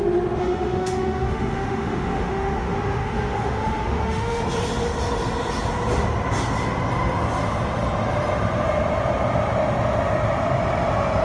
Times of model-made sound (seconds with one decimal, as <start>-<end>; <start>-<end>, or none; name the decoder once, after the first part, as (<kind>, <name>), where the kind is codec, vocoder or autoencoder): 0.4-4.4 (autoencoder, DAC-VAE)